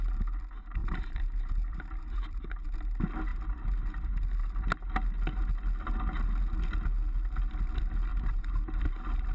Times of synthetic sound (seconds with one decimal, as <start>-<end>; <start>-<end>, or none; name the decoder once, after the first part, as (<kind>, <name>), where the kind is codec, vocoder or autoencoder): 0.8-2.7 (vocoder, BigVGAN v2); 8.1-8.8